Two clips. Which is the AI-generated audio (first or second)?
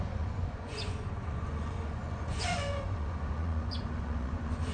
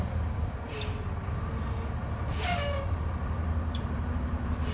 first